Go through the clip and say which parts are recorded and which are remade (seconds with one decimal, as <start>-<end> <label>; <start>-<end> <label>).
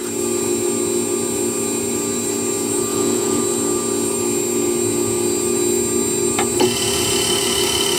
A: 0.0-2.9 recorded; 2.9-3.4 remade; 3.4-8.0 recorded